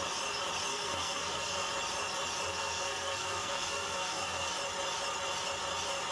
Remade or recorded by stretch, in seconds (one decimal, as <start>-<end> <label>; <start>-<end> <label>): 0.0-0.7 recorded; 0.7-1.7 remade; 1.7-2.5 recorded; 2.5-4.5 remade; 4.5-6.1 recorded